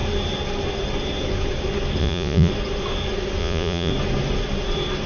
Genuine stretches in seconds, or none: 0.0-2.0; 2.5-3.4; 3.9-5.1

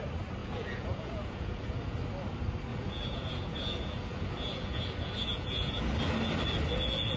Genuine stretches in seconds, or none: 0.0-0.4; 2.0-2.7; 5.8-7.2

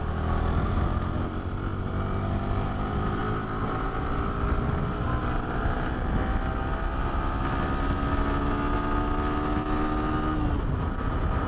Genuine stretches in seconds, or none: 0.0-11.5

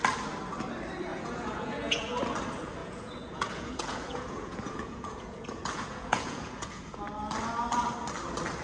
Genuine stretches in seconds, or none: 0.0-1.1; 2.2-2.8; 7.0-8.6

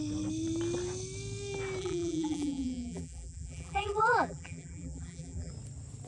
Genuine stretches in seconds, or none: 0.0-1.8; 5.5-6.1

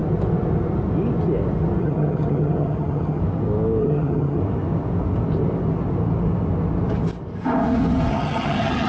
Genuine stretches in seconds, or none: 0.0-1.8; 3.2-3.8; 4.4-8.1

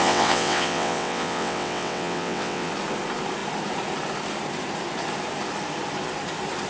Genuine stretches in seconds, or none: 2.7-6.7